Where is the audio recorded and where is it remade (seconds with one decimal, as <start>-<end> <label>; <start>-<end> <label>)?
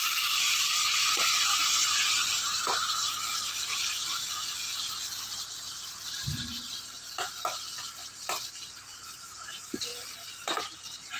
0.0-9.9 remade; 9.9-10.6 recorded; 10.6-11.2 remade